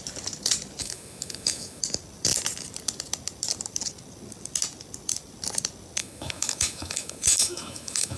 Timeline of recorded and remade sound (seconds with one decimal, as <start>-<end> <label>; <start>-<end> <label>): 0.0-0.8 recorded; 0.8-1.8 remade; 1.8-6.0 recorded; 6.0-8.2 remade